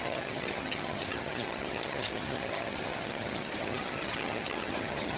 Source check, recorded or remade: remade